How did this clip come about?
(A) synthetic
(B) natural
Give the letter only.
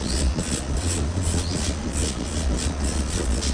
A